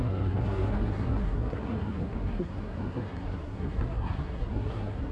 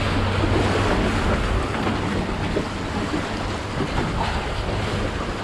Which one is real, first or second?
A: second